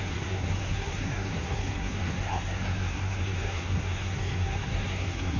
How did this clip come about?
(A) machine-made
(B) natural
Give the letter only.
A